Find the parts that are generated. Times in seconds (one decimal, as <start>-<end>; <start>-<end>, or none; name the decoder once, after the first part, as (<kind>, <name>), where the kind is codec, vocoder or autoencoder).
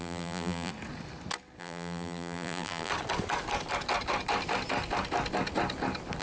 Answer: 0.0-0.7 (vocoder, BigVGAN v2); 1.6-2.9